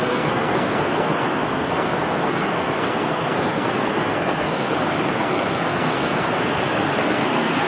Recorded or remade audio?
remade